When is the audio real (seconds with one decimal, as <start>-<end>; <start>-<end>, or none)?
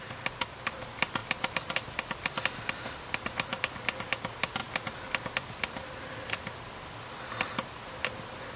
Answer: 0.0-8.6